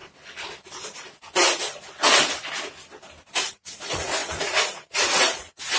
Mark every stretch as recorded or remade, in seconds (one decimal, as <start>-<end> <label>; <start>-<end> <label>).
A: 0.0-3.5 recorded; 3.5-5.8 remade